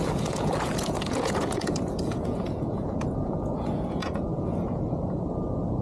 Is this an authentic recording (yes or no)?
no